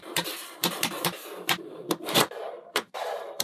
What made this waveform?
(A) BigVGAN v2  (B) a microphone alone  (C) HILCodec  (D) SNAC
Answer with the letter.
A